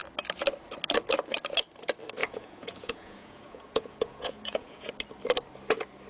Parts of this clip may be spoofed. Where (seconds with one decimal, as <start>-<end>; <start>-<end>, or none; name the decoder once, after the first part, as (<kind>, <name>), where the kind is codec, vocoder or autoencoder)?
2.2-4.9 (vocoder, Vocos)